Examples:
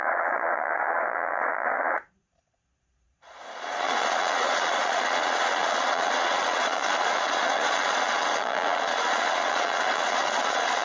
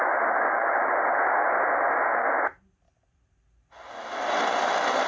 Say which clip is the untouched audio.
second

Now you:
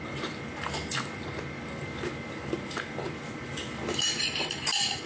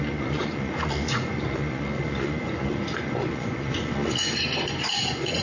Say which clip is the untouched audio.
first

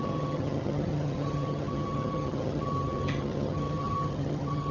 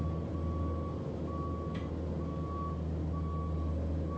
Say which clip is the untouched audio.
second